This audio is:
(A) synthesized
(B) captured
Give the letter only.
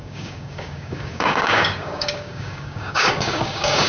A